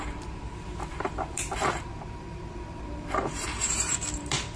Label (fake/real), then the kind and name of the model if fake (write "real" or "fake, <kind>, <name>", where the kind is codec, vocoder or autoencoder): fake, vocoder, BigVGAN v2